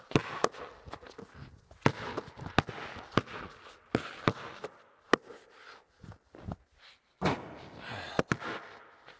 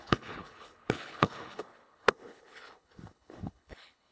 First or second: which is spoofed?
second